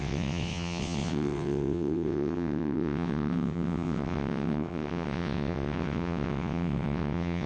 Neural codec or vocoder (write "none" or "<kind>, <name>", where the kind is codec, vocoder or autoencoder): vocoder, WaveNeXt